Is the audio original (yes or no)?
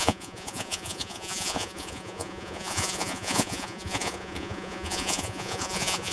no